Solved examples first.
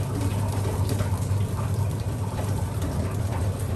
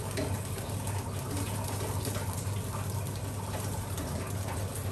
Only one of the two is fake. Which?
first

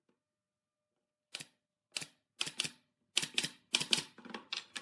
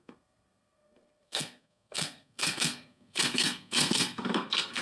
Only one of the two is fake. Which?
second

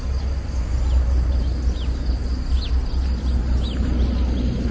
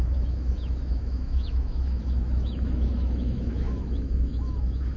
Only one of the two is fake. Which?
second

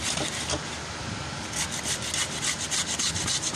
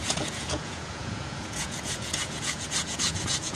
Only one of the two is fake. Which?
second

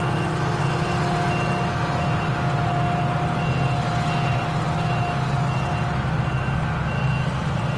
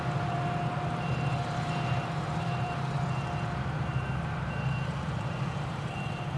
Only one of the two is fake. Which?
second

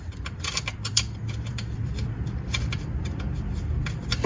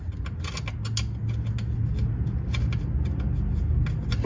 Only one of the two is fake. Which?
first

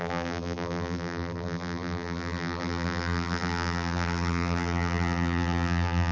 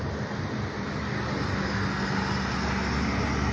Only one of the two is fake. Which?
first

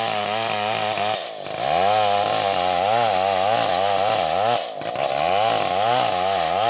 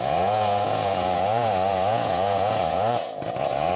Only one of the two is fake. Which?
second